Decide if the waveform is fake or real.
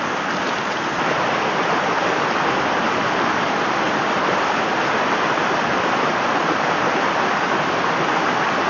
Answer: real